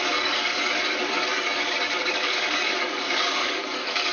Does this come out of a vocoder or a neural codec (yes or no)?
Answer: yes